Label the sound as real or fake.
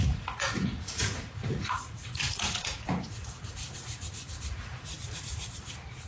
fake